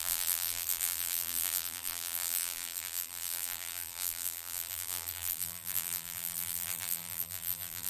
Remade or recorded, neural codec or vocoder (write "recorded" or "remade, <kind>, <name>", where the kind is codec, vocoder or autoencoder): remade, vocoder, BigVGAN v2